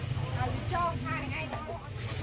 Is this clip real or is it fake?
real